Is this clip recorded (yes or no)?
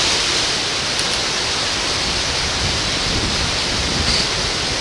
yes